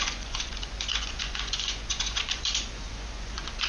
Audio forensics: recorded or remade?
remade